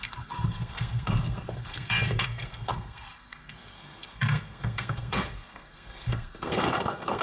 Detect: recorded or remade remade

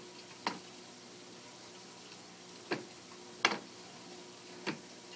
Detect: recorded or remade recorded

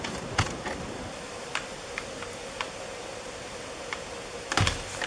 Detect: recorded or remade recorded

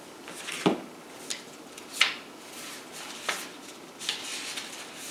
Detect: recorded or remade recorded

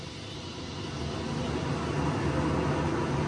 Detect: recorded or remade recorded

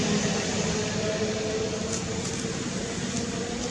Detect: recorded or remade recorded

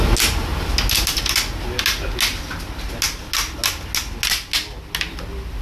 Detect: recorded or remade recorded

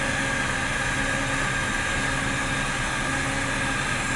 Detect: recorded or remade recorded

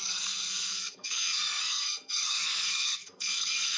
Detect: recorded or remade remade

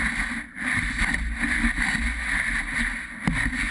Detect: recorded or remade recorded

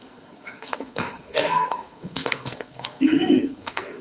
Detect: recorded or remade remade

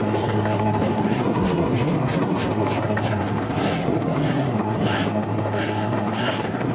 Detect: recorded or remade remade